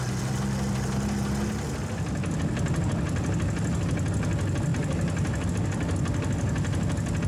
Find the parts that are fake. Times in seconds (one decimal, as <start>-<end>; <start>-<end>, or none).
none

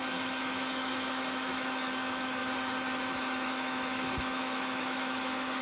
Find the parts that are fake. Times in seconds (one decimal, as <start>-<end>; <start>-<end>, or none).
0.0-2.4; 3.1-5.6

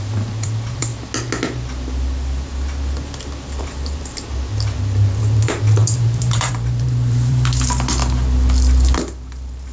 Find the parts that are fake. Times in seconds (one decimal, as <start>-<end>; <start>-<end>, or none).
0.0-0.9; 3.6-4.3; 5.2-8.0; 9.0-9.7